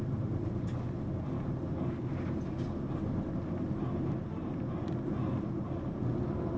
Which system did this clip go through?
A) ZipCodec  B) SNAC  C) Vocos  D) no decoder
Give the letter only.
D